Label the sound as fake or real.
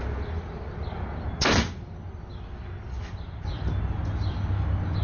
real